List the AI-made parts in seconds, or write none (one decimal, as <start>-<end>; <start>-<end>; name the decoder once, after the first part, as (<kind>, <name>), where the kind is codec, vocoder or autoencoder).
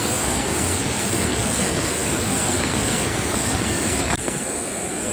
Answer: 0.0-5.1 (codec, SNAC)